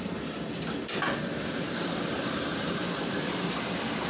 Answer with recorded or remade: recorded